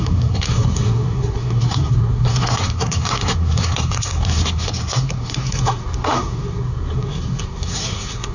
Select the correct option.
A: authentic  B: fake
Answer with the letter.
B